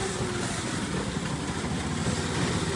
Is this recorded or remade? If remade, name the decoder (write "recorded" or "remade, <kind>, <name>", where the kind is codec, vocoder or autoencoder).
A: recorded